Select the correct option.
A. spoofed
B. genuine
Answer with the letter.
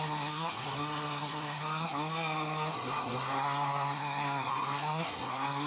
A